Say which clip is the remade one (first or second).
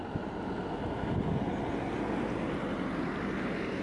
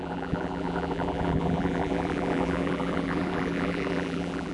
second